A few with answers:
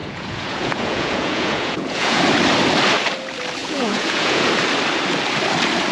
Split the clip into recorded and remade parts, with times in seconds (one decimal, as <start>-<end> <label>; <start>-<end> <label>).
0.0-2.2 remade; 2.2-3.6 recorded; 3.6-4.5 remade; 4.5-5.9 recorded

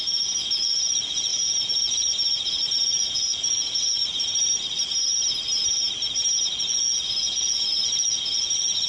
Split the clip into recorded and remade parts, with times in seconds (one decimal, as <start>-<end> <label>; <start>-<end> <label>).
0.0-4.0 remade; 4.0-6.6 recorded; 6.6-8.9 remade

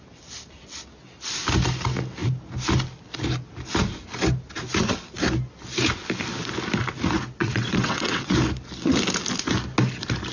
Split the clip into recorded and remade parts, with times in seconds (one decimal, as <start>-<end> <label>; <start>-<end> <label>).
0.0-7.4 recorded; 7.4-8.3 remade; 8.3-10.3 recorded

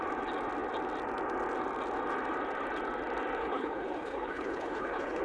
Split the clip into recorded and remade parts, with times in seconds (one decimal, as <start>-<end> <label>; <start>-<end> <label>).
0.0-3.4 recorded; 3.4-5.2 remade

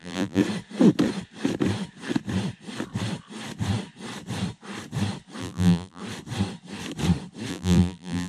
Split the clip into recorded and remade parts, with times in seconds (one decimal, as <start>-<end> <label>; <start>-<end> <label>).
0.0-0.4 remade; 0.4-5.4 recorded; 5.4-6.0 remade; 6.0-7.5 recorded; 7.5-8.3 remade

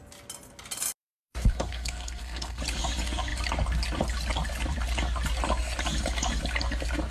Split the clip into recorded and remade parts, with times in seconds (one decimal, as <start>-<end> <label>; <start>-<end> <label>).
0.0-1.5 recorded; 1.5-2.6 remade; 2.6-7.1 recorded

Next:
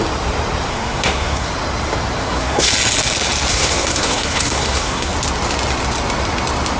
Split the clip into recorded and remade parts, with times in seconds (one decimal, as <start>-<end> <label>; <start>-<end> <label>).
0.0-0.7 recorded; 0.7-1.5 remade; 1.5-2.2 recorded; 2.2-2.7 remade; 2.7-3.5 recorded; 3.5-5.1 remade; 5.1-6.8 recorded

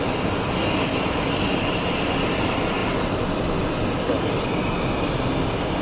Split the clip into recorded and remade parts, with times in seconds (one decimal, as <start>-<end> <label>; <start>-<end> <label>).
0.0-5.8 recorded